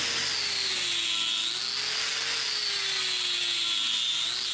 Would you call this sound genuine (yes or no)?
yes